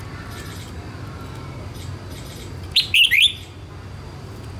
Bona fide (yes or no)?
yes